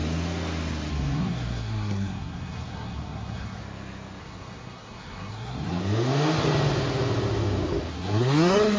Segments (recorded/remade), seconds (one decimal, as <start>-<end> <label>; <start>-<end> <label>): 0.0-0.9 recorded; 0.9-3.6 remade; 3.6-4.2 recorded; 4.2-5.8 remade; 5.8-7.9 recorded; 7.9-8.8 remade